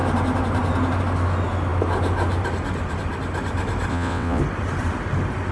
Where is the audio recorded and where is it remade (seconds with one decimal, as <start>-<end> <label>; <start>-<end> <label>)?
0.0-3.9 recorded; 3.9-4.4 remade; 4.4-5.5 recorded

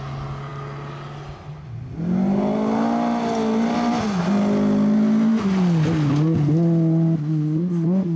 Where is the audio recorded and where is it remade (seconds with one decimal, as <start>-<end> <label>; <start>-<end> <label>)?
0.0-8.2 recorded

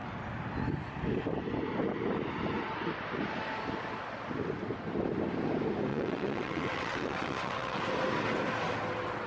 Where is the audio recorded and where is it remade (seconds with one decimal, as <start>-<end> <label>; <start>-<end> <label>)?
0.0-5.9 recorded; 5.9-7.8 remade; 7.8-9.3 recorded

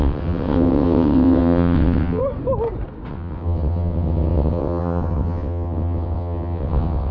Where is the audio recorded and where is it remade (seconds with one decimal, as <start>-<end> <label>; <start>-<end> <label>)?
0.0-2.2 remade; 2.2-3.1 recorded; 3.1-7.1 remade

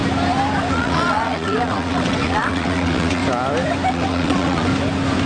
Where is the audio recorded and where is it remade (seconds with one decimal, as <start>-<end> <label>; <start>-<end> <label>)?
0.0-0.7 recorded; 0.7-3.2 remade; 3.2-3.9 recorded; 3.9-4.7 remade; 4.7-5.3 recorded

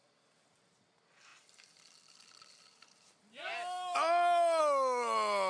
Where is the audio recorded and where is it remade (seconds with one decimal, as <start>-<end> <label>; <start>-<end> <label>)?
0.0-5.5 recorded

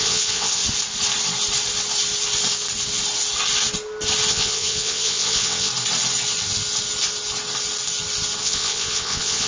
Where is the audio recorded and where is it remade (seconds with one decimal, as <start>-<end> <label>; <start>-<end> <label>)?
0.0-0.6 remade; 0.6-4.3 recorded; 4.3-5.7 remade; 5.7-8.4 recorded; 8.4-9.5 remade

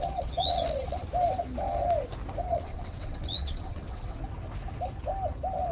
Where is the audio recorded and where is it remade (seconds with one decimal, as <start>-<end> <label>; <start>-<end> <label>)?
0.0-1.0 remade; 1.0-2.5 recorded; 2.5-4.2 remade; 4.2-5.7 recorded